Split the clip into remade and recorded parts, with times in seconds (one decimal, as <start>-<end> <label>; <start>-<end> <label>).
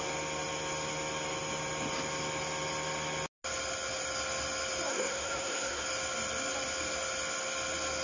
0.0-4.9 recorded; 4.9-5.8 remade; 5.8-8.0 recorded